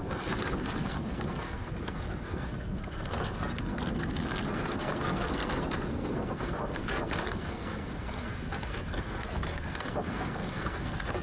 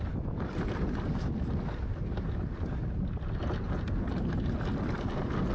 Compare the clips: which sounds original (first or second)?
second